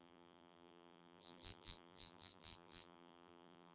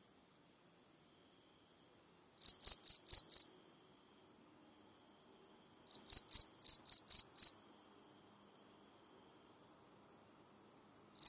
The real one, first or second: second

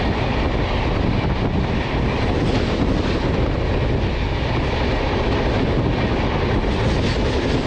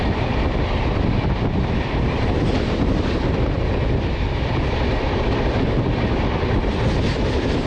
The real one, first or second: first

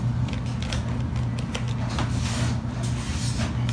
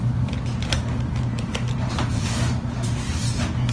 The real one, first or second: first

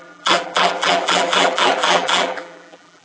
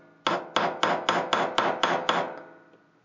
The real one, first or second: second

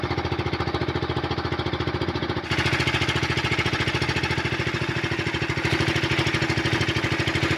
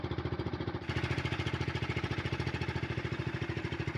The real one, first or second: first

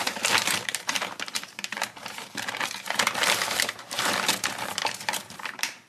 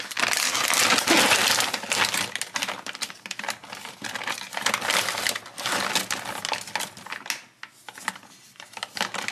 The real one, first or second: second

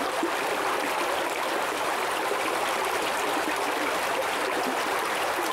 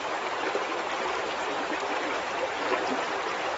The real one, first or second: first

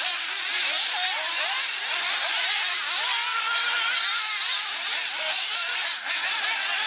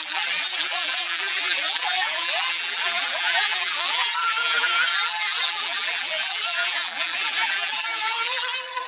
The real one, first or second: first